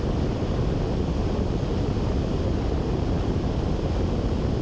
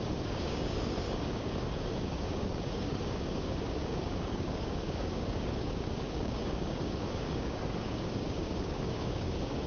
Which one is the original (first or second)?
first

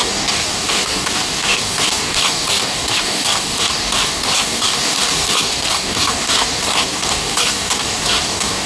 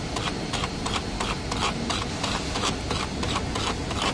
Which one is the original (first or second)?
second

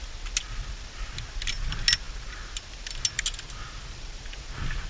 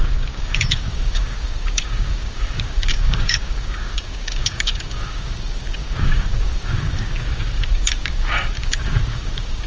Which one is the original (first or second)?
first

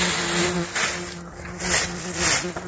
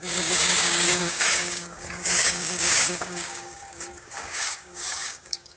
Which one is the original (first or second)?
first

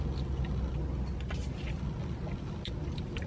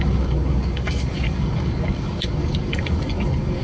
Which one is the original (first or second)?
first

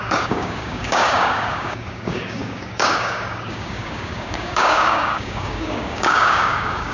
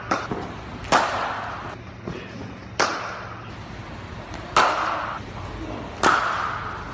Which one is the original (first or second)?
second